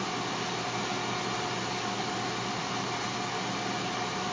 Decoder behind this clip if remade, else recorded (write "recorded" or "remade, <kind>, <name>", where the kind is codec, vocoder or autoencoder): recorded